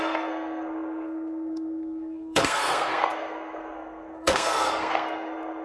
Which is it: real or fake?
fake